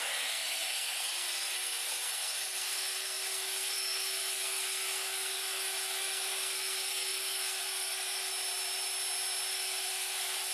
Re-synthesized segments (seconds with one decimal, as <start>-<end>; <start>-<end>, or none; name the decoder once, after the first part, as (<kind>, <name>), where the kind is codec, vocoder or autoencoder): 0.0-8.3 (codec, SNAC); 9.5-10.5